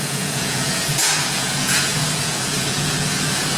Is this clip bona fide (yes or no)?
no